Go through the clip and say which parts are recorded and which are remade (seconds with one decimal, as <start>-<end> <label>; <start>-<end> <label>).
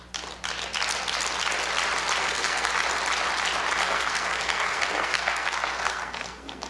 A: 0.0-2.2 recorded; 2.2-2.7 remade; 2.7-3.8 recorded; 3.8-6.7 remade